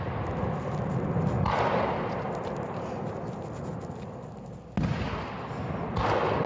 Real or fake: real